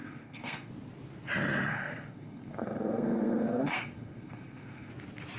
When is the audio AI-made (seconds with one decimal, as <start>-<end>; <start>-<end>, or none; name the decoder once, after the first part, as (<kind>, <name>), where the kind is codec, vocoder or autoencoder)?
0.0-0.7 (codec, SNAC); 1.7-4.9